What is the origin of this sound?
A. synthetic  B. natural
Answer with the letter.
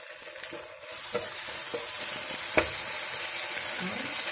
B